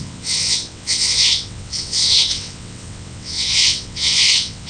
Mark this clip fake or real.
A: fake